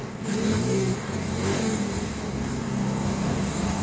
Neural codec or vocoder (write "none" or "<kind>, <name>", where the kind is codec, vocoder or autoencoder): codec, DAC